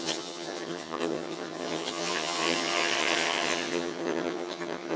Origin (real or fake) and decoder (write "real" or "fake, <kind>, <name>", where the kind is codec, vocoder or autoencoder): fake, vocoder, HiFi-GAN